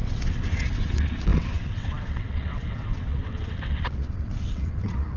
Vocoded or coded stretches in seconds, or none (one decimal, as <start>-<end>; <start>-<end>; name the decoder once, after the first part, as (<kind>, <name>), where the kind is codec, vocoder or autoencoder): 0.0-5.2 (vocoder, WaveNeXt)